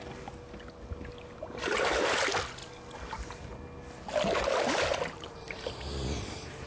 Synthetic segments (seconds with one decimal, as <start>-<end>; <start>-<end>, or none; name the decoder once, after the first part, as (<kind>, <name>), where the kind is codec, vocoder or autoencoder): none